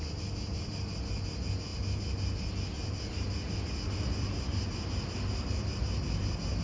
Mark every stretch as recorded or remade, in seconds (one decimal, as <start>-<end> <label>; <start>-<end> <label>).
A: 0.0-6.6 recorded